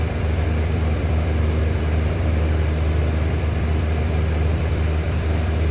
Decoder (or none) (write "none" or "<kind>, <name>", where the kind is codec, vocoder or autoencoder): vocoder, BigVGAN v2